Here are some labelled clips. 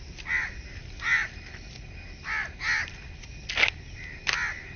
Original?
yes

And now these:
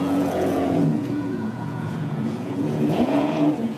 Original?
no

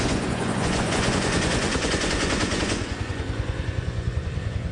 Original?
no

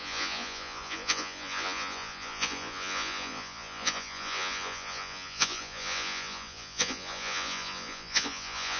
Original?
no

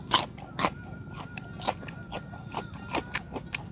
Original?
yes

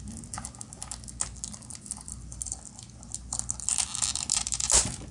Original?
yes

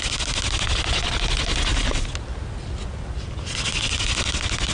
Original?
yes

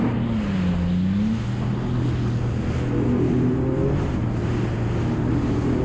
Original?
yes